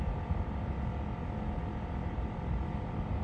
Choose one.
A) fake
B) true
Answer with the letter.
B